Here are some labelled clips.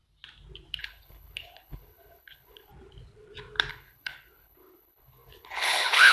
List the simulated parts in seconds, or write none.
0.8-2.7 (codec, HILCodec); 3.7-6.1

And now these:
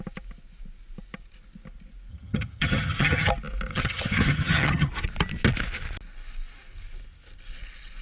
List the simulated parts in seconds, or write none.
2.1-3.3 (vocoder, HiFi-GAN); 3.7-4.9

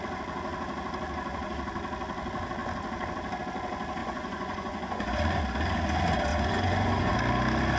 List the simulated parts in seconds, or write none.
4.0-5.4 (vocoder, Vocos); 6.3-7.1